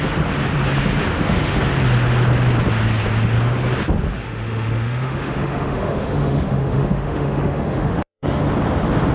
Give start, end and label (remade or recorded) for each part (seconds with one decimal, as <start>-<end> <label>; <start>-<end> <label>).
0.0-1.1 recorded; 1.1-1.6 remade; 1.6-4.2 recorded; 4.2-8.4 remade; 8.4-9.1 recorded